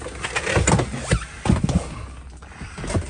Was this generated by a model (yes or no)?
no